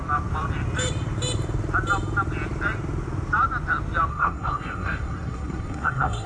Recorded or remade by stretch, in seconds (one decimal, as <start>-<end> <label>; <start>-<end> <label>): 0.0-4.1 recorded; 4.1-6.3 remade